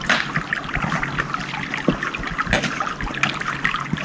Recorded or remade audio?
recorded